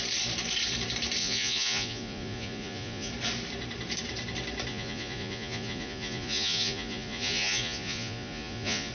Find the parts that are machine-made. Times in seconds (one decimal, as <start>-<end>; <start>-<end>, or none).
1.2-3.1; 4.7-8.9